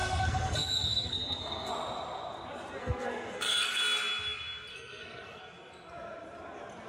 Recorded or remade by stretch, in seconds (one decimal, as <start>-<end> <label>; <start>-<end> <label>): 0.0-1.7 remade; 1.7-2.8 recorded; 2.8-3.8 remade; 3.8-4.7 recorded; 4.7-5.4 remade; 5.4-6.9 recorded